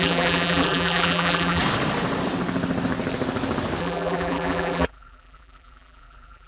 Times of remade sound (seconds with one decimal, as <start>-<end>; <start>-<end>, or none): 0.0-1.6; 3.8-6.5